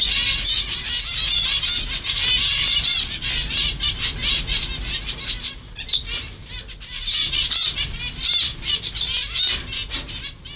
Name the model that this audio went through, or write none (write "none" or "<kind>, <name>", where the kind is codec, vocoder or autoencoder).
none